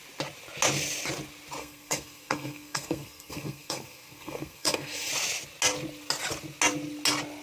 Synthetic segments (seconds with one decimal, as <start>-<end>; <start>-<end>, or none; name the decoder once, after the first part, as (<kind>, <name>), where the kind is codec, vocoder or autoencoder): 1.6-5.1 (codec, SNAC)